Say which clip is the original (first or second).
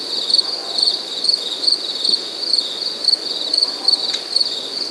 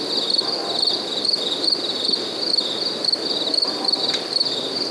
second